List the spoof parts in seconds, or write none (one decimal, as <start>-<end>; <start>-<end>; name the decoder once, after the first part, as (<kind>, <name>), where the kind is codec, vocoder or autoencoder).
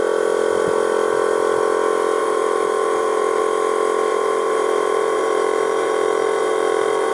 2.2-3.4 (vocoder, BigVGAN v2); 4.1-7.1